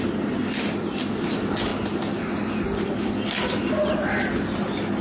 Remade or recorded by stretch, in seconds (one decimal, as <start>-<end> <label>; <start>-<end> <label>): 0.0-5.0 recorded